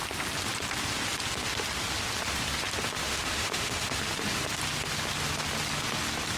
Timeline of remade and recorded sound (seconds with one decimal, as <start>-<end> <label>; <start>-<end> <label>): 0.0-3.0 recorded; 3.0-4.4 remade; 4.4-6.4 recorded